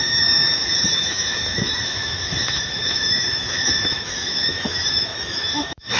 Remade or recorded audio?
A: remade